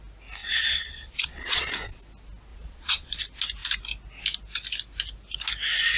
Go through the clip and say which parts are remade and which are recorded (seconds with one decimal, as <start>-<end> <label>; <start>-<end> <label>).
0.0-0.4 recorded; 0.4-1.7 remade; 1.7-2.5 recorded; 2.5-3.2 remade; 3.2-6.0 recorded